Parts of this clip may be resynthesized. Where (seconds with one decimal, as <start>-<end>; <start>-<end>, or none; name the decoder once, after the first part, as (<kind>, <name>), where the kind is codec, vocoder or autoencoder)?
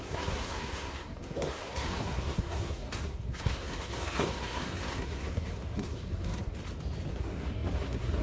0.0-6.5 (codec, SNAC); 7.1-8.2